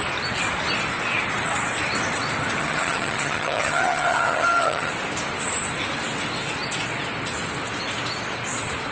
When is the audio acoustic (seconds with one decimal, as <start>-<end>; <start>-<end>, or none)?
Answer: 0.0-2.6; 4.9-8.9

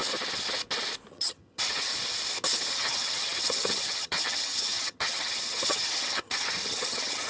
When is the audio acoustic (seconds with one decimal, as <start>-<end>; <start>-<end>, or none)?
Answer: 0.0-1.1; 1.9-2.7

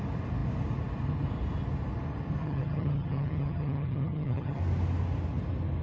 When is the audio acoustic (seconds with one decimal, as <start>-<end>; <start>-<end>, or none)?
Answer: 0.0-2.4; 4.6-5.8

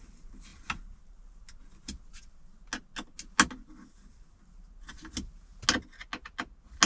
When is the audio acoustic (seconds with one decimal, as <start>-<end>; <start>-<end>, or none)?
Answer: 0.0-6.9

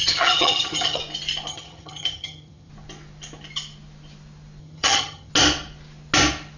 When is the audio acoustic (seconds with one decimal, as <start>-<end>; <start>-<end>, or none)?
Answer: 1.0-1.5; 2.7-4.6; 5.3-6.6

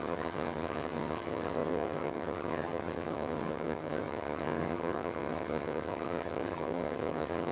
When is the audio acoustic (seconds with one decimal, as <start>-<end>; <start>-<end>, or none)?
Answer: none